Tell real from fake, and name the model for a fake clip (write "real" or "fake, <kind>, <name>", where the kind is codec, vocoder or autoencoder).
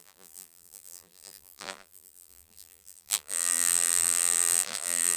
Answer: fake, vocoder, BigVGAN v2